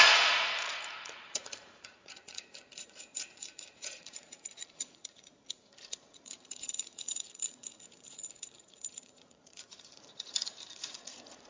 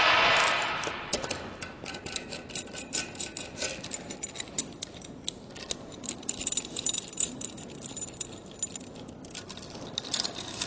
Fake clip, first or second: first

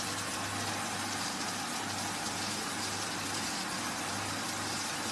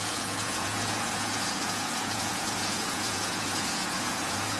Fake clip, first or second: second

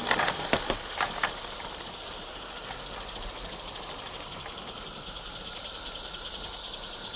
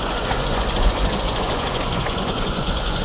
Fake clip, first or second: second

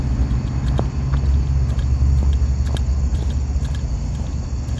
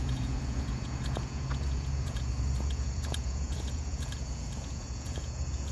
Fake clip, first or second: second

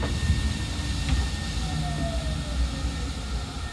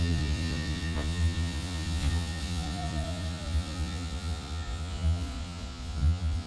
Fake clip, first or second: second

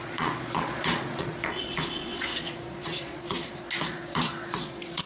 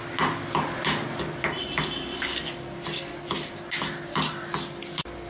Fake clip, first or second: first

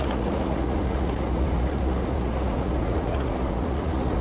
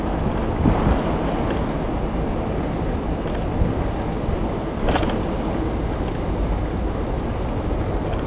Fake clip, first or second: first